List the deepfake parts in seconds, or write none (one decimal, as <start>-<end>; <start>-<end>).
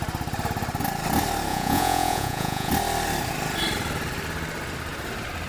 1.5-2.7